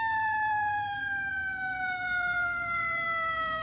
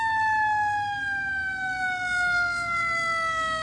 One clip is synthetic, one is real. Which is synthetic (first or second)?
first